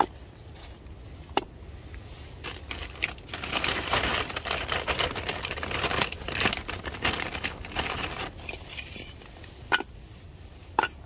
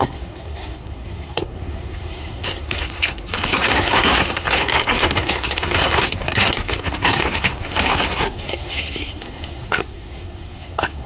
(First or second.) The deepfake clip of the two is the second